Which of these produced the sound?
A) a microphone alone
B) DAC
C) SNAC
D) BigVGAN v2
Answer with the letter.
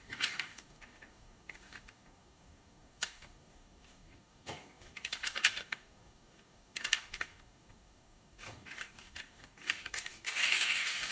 B